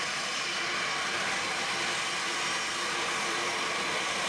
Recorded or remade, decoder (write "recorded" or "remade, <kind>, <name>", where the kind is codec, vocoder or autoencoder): recorded